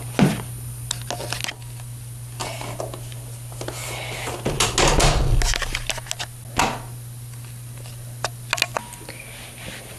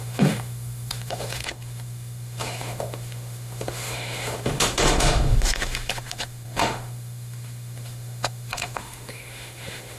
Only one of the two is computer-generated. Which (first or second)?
second